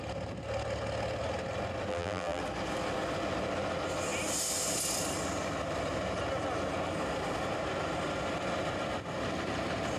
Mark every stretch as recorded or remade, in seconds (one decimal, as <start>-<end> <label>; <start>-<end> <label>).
0.0-1.9 recorded; 1.9-2.4 remade; 2.4-10.0 recorded